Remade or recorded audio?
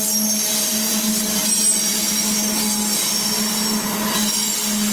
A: recorded